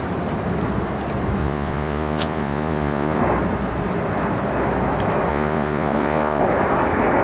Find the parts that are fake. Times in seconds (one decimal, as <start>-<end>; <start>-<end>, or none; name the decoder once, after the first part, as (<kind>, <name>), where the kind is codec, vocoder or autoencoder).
1.4-3.2 (vocoder, Vocos); 5.3-6.4